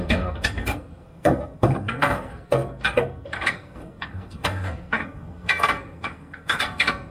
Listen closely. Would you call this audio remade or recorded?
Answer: remade